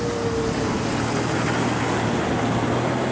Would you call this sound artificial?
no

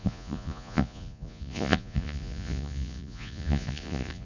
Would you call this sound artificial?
yes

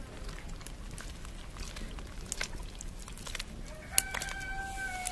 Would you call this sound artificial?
no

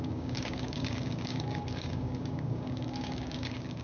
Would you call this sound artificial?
yes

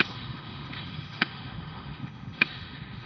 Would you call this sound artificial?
yes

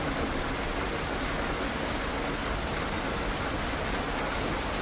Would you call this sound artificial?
no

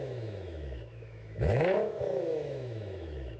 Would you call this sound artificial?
yes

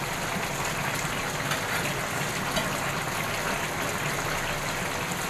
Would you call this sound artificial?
no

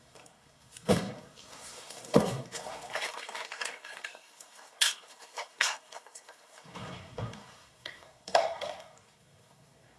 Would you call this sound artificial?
yes